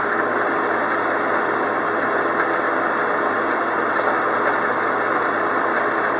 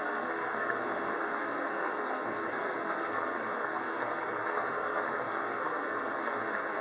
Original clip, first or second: first